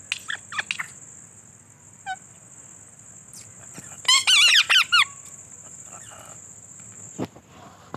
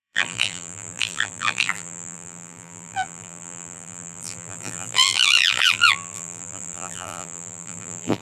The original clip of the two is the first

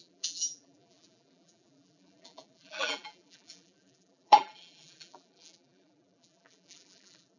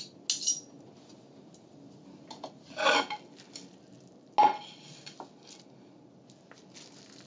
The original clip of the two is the second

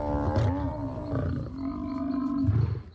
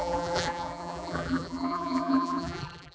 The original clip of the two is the first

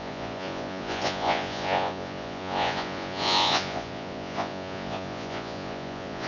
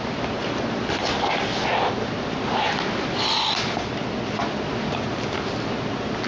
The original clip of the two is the second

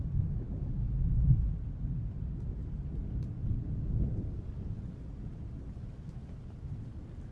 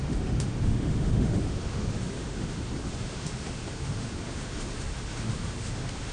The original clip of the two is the first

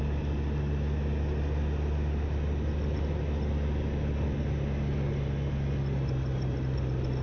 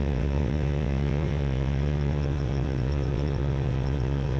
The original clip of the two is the first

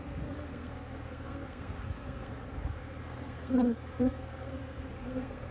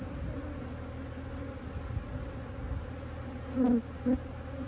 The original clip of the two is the second